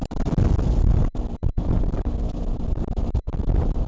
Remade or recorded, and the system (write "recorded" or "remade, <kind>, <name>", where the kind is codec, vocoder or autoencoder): recorded